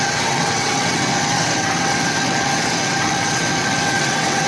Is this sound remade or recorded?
remade